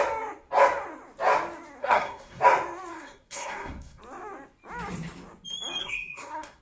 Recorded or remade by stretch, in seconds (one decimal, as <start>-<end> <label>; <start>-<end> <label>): 0.0-1.8 recorded; 1.8-2.4 remade; 2.4-2.9 recorded; 2.9-4.0 remade; 4.0-5.8 recorded; 5.8-6.6 remade

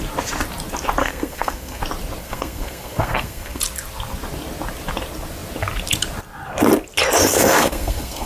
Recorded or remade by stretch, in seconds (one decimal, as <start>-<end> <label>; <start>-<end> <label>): 0.0-1.0 recorded; 1.0-1.8 remade; 1.8-2.2 recorded; 2.2-3.6 remade; 3.6-7.2 recorded; 7.2-8.3 remade

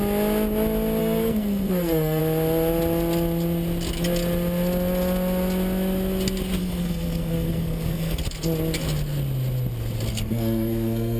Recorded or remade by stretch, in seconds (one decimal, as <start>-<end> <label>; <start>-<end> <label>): 0.0-1.0 recorded; 1.0-2.2 remade; 2.2-6.6 recorded; 6.6-8.2 remade; 8.2-10.1 recorded; 10.1-11.2 remade

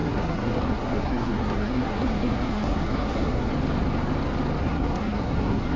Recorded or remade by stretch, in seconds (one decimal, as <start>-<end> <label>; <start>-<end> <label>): 0.0-3.5 remade; 3.5-4.6 recorded; 4.6-5.8 remade

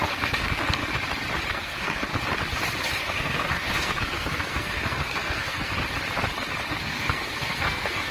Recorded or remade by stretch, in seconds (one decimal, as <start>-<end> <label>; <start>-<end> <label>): 0.0-0.8 remade; 0.8-1.5 recorded; 1.5-2.1 remade; 2.1-3.0 recorded; 3.0-5.7 remade; 5.7-6.7 recorded; 6.7-8.1 remade

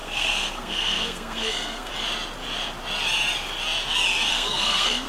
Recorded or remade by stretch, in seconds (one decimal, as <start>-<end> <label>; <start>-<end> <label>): 0.0-1.9 remade; 1.9-4.3 recorded; 4.3-5.1 remade